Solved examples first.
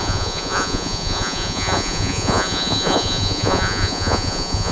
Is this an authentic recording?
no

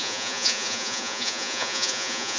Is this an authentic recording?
no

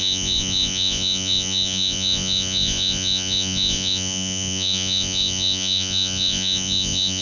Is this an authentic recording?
no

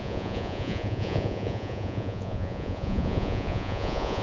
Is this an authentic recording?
no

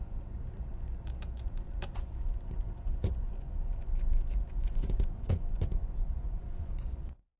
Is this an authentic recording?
no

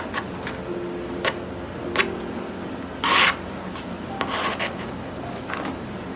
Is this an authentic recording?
yes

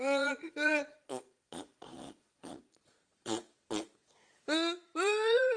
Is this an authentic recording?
no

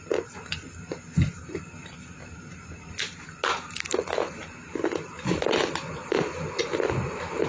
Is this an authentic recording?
yes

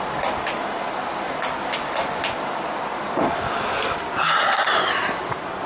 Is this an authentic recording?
yes